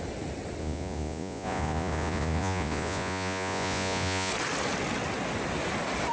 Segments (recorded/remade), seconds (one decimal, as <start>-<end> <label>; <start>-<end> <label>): 0.0-0.6 recorded; 0.6-4.3 remade; 4.3-6.1 recorded